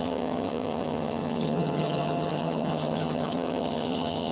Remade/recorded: remade